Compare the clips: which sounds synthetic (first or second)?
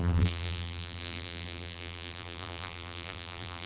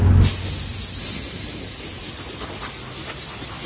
first